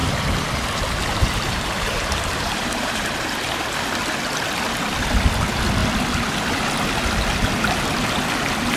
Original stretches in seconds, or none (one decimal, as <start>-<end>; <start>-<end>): 3.8-8.8